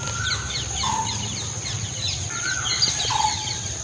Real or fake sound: real